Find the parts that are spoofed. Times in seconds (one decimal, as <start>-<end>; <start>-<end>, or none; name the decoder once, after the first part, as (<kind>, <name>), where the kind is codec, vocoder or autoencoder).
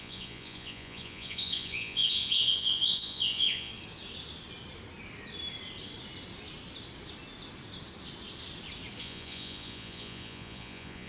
0.0-3.7 (vocoder, Vocos); 9.0-11.1